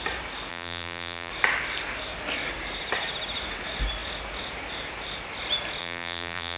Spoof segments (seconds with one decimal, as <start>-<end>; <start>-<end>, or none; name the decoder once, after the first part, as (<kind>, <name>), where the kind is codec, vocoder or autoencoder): 0.5-1.3 (vocoder, BigVGAN v2); 5.8-6.6